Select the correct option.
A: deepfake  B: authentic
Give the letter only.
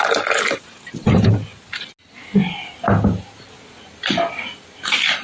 B